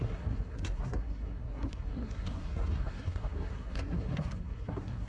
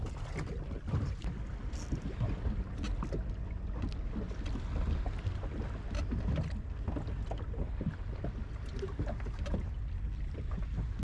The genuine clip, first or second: second